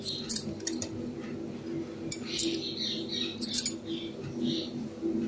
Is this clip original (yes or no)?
yes